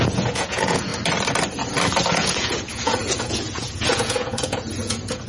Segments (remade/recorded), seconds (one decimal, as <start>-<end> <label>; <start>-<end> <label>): 0.0-0.9 remade; 0.9-2.1 recorded; 2.1-5.3 remade

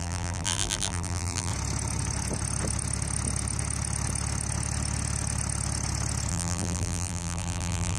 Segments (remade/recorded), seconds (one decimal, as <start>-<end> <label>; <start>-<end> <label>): 0.0-1.5 remade; 1.5-6.3 recorded; 6.3-8.0 remade